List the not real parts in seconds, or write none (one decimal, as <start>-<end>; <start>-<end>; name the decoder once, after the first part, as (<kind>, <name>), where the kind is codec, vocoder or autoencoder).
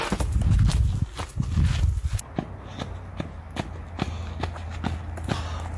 none